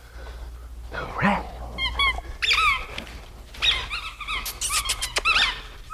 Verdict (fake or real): real